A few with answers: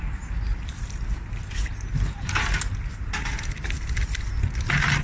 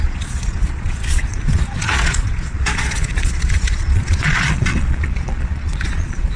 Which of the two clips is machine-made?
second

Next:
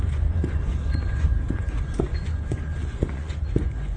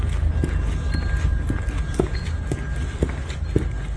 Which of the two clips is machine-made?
first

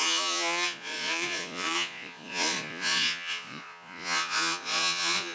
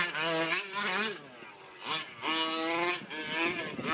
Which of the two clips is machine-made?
first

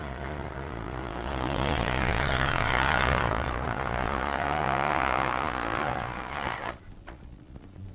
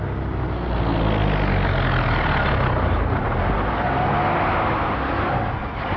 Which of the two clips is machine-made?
first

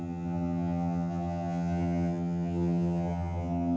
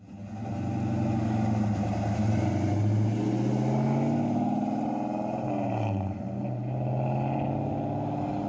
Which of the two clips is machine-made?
first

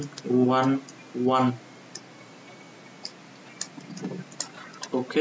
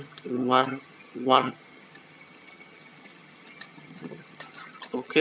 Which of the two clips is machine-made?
second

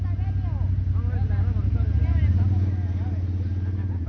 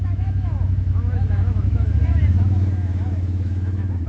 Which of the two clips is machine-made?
second